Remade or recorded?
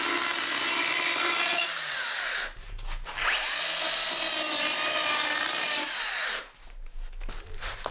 recorded